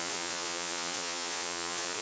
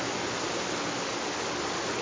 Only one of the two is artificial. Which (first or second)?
first